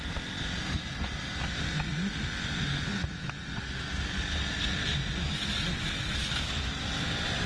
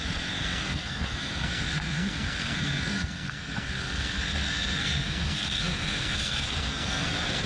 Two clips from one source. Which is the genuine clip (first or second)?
first